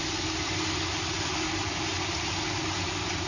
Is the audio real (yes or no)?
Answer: no